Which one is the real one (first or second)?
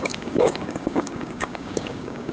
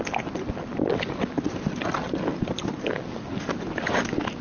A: second